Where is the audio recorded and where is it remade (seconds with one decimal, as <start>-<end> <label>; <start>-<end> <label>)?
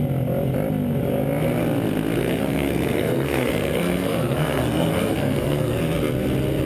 0.0-2.2 recorded; 2.2-5.8 remade; 5.8-6.7 recorded